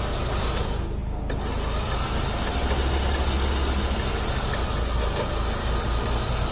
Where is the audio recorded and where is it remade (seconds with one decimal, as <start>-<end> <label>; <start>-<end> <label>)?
0.0-6.5 recorded